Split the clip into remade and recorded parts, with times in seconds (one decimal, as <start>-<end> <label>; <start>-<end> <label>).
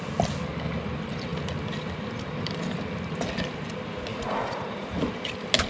0.0-4.1 recorded; 4.1-5.1 remade; 5.1-5.7 recorded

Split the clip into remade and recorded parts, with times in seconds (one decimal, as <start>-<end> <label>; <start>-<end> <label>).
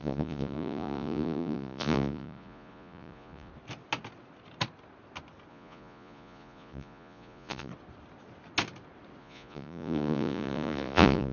0.0-3.5 remade; 3.5-5.5 recorded; 5.5-7.7 remade; 7.7-9.2 recorded; 9.2-11.3 remade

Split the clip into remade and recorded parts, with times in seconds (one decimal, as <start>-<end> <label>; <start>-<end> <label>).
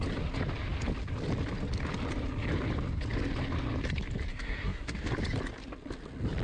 0.0-4.3 recorded; 4.3-5.0 remade; 5.0-6.4 recorded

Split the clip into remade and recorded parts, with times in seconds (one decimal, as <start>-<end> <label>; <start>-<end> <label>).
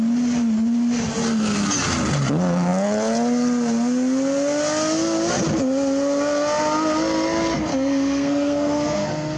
0.0-7.7 recorded; 7.7-9.4 remade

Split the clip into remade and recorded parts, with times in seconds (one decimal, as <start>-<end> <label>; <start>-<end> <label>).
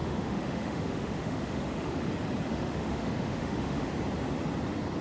0.0-2.1 remade; 2.1-2.5 recorded; 2.5-3.9 remade; 3.9-5.0 recorded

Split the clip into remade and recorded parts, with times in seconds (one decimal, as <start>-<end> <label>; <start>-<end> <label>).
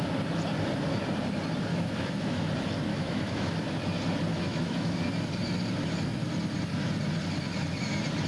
0.0-1.7 recorded; 1.7-2.5 remade; 2.5-2.9 recorded; 2.9-3.5 remade; 3.5-4.3 recorded; 4.3-4.9 remade; 4.9-8.3 recorded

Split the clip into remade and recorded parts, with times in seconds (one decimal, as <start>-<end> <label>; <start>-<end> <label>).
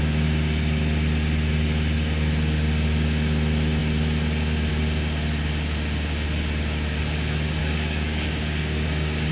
0.0-7.6 recorded; 7.6-9.3 remade